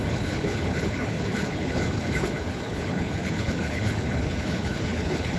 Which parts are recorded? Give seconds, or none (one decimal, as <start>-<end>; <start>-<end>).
none